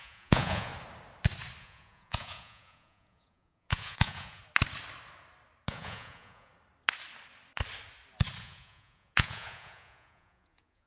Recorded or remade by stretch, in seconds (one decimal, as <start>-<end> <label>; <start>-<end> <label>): 0.0-0.7 remade; 0.7-1.6 recorded; 1.6-4.4 remade; 4.4-5.7 recorded; 5.7-6.5 remade; 6.5-8.4 recorded; 8.4-10.9 remade